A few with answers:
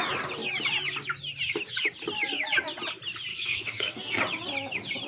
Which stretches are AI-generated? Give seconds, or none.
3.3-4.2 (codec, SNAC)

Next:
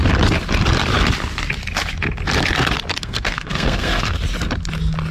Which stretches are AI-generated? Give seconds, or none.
3.0-4.2 (codec, SNAC)

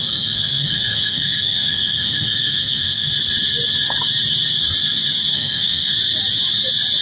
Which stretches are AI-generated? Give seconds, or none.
0.0-3.1 (codec, SNAC); 5.3-5.9

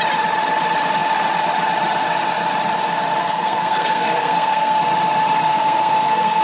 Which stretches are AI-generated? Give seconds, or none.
3.2-4.8 (codec, SNAC); 5.5-6.4

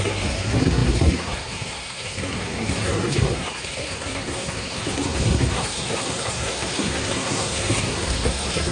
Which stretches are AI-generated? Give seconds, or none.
0.0-8.7 (codec, SNAC)